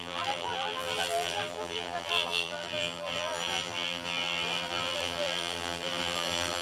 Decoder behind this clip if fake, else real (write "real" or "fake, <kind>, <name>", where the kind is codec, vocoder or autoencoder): fake, vocoder, BigVGAN v2